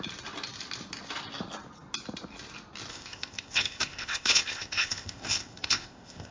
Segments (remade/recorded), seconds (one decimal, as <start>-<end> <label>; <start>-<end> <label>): 0.0-2.9 recorded; 2.9-6.3 remade